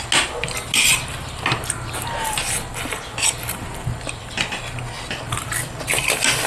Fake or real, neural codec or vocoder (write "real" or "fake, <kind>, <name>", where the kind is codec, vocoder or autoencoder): real